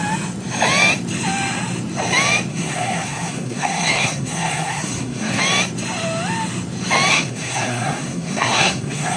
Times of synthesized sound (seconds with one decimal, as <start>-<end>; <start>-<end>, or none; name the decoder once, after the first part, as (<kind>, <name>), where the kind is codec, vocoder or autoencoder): 2.5-5.4 (codec, SNAC); 7.1-9.2